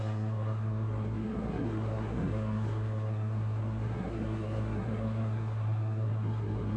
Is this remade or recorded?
remade